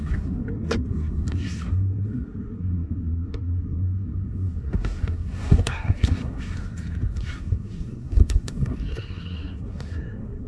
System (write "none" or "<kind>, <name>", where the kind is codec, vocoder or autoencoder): codec, SNAC